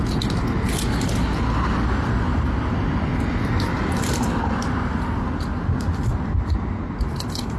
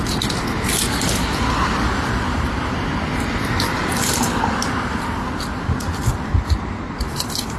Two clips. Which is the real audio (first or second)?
first